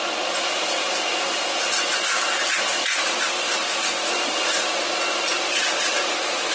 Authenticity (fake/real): real